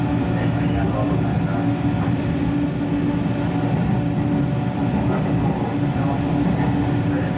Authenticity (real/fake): real